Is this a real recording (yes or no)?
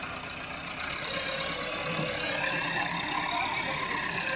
yes